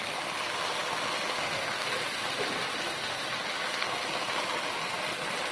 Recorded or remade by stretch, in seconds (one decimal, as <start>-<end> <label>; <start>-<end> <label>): 0.0-5.5 recorded